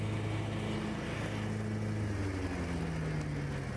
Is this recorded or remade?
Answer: recorded